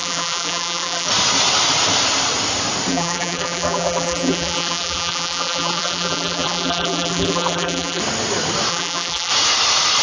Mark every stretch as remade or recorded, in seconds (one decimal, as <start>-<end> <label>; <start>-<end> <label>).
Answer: 0.0-1.1 remade; 1.1-2.9 recorded; 2.9-8.0 remade; 8.0-8.7 recorded; 8.7-9.3 remade; 9.3-10.0 recorded